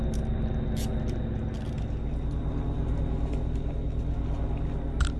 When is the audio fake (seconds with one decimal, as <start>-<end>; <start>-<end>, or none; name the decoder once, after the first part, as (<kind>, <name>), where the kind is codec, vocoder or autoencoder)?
none